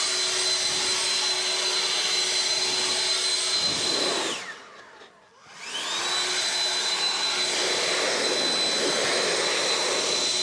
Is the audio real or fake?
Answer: real